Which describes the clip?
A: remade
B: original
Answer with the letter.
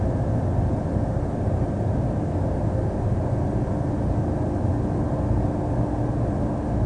B